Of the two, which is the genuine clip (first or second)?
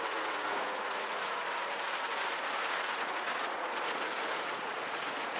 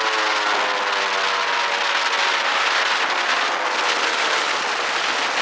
second